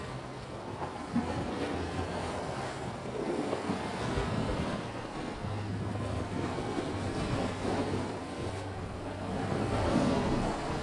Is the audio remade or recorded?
remade